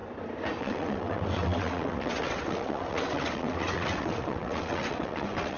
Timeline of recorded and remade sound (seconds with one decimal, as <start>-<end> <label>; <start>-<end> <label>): 0.0-0.6 recorded; 0.6-5.6 remade